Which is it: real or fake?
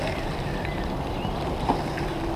real